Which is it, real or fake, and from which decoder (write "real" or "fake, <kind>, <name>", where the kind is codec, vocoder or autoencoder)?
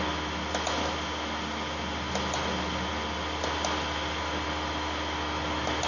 real